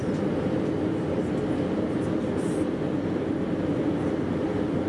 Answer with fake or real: real